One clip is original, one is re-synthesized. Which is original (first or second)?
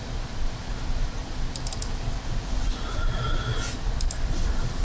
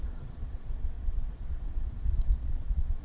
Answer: first